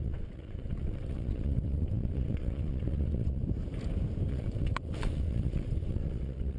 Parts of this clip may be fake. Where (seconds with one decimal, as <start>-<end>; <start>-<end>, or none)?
0.0-3.4; 4.3-6.6